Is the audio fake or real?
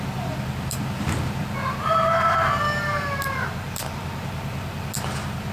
real